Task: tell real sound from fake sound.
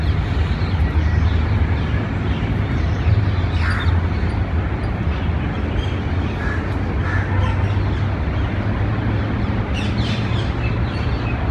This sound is real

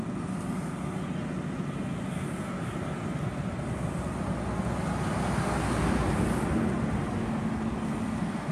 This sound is real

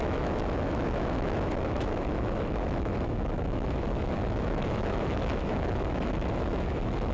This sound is fake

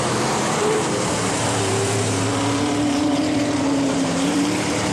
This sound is fake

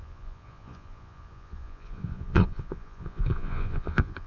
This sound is fake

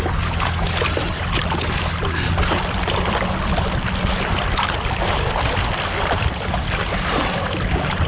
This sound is real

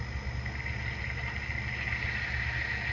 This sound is real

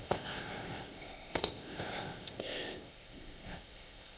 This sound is fake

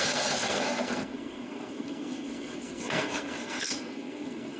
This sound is fake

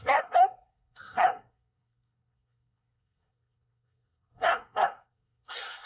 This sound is fake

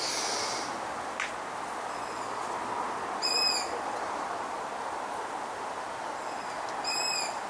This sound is real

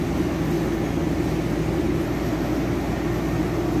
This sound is real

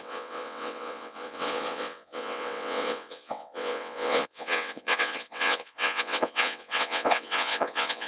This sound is fake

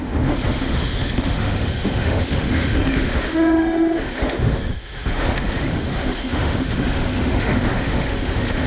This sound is fake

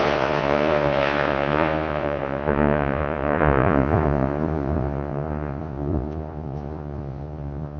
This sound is fake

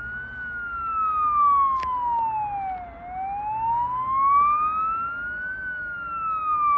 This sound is real